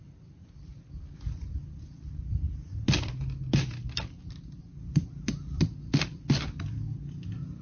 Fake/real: real